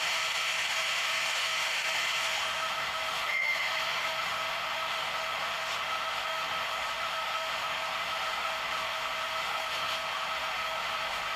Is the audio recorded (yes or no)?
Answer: no